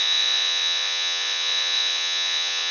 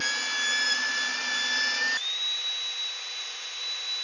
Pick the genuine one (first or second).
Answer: second